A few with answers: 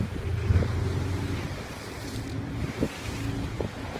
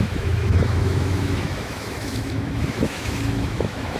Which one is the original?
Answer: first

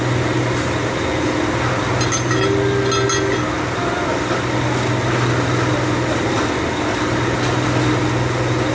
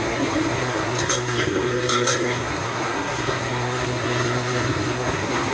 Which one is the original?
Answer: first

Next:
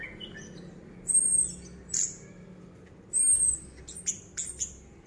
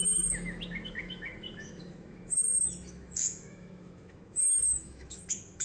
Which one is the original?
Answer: first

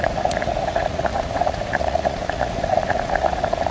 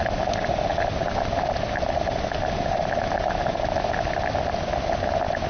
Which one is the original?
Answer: second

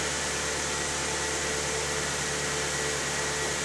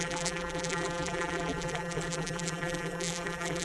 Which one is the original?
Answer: first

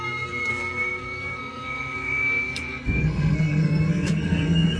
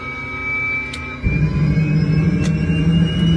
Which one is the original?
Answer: second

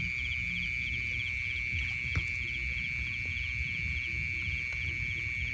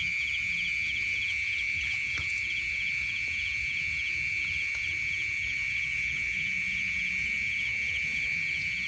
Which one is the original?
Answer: first